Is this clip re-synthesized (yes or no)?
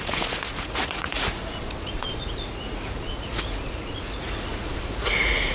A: yes